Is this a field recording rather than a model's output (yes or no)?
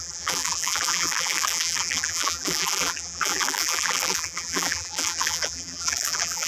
no